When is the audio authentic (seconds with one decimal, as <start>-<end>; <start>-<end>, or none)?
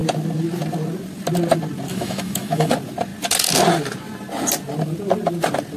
0.0-1.9; 2.7-5.8